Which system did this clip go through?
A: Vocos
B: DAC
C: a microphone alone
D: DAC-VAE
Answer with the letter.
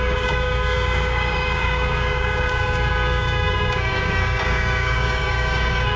B